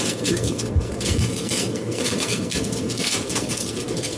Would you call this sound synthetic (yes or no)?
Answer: yes